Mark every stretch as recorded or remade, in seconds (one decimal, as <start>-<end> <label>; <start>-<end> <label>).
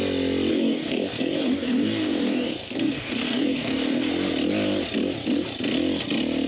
0.0-0.5 recorded; 0.5-4.1 remade; 4.1-6.5 recorded